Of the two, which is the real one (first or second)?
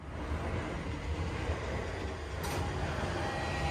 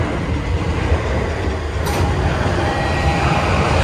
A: first